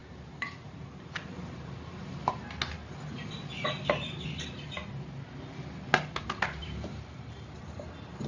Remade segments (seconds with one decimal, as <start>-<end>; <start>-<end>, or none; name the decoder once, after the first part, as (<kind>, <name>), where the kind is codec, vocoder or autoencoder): 0.0-2.4 (vocoder, BigVGAN v2); 6.6-7.9